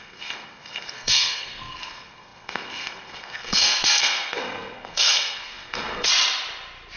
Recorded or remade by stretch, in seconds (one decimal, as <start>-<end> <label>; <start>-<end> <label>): 0.0-6.1 remade; 6.1-7.0 recorded